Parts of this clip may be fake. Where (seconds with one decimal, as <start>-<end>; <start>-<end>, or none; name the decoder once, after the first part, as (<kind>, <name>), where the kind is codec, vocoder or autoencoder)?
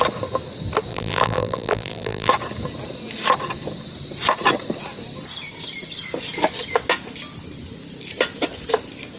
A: 0.9-2.3 (vocoder, BigVGAN v2)